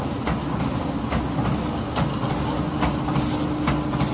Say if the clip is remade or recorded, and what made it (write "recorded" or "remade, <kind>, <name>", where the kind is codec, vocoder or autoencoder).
recorded